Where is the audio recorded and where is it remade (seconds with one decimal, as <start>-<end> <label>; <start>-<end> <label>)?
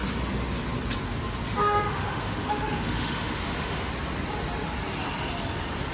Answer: 0.0-1.6 recorded; 1.6-3.9 remade; 3.9-5.9 recorded